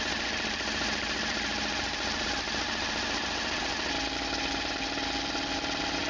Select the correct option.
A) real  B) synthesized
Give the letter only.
A